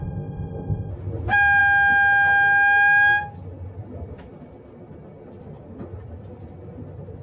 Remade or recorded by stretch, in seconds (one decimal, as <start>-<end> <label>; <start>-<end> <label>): 0.0-0.9 remade; 0.9-7.2 recorded